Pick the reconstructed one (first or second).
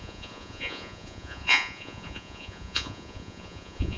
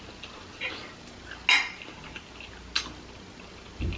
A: first